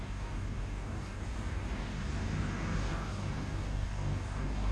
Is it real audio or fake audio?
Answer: fake